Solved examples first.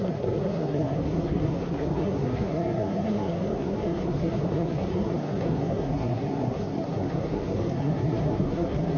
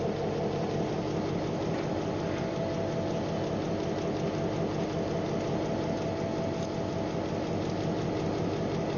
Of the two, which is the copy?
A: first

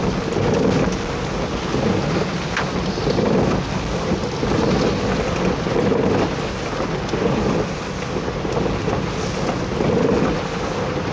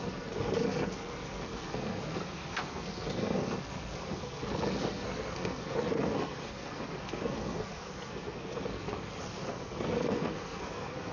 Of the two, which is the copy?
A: second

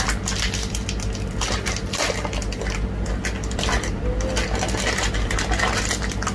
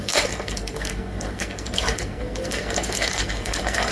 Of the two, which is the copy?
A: second